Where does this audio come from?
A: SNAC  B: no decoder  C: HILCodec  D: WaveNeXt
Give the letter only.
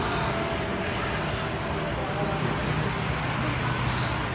B